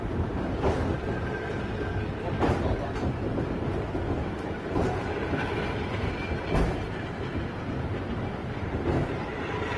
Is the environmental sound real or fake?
fake